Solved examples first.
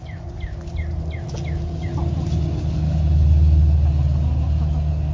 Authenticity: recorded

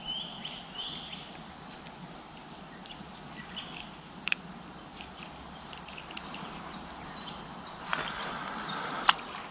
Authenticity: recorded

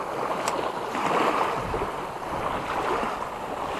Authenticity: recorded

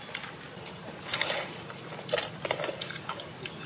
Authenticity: recorded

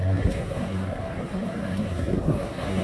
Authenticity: remade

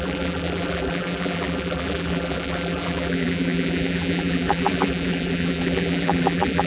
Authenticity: remade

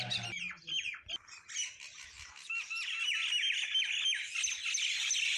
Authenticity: recorded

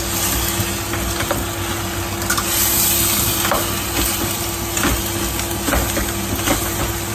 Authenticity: recorded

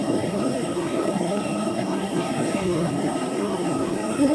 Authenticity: remade